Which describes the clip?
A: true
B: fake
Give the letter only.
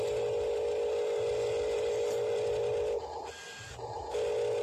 A